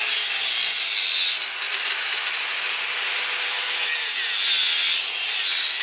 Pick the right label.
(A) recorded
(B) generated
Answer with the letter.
A